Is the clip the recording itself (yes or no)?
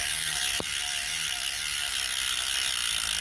no